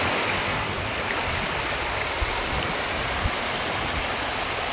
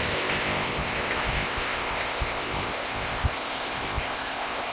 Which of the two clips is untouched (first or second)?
first